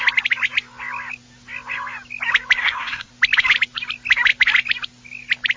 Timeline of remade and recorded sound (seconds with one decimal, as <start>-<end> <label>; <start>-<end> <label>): 0.0-2.6 recorded; 2.6-3.1 remade; 3.1-5.6 recorded